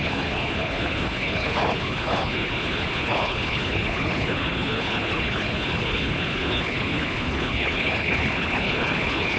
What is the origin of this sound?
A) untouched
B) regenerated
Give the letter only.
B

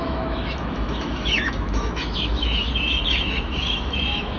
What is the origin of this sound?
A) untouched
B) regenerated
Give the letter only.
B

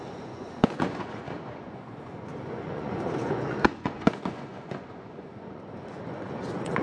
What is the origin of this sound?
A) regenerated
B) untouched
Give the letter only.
A